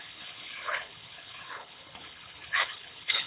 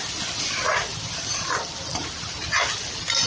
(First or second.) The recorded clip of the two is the second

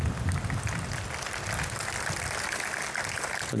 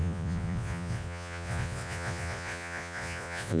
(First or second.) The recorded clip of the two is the first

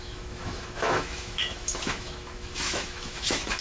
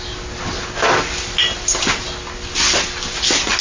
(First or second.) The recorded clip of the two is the second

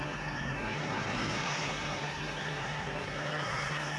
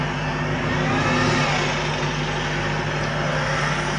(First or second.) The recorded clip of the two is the second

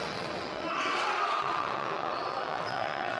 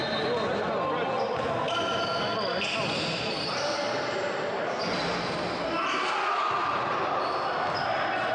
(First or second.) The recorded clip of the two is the second